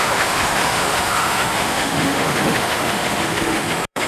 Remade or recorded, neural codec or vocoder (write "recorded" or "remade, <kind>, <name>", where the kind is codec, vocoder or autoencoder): remade, autoencoder, DAC-VAE